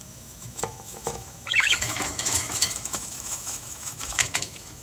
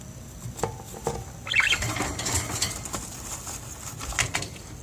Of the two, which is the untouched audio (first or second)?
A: second